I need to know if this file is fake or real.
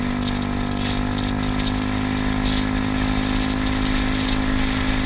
real